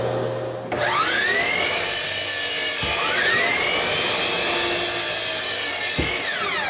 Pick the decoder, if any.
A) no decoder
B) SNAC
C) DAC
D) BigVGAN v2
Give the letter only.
A